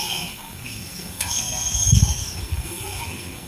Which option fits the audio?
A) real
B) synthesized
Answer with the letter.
B